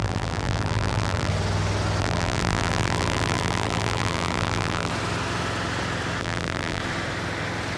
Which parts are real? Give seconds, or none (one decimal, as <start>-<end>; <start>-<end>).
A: 1.3-2.0; 4.9-6.2; 6.8-7.8